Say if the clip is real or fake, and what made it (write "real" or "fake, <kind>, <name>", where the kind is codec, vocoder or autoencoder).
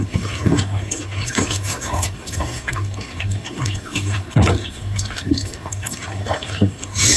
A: fake, codec, SNAC